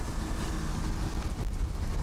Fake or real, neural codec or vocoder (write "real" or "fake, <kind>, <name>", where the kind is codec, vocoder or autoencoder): real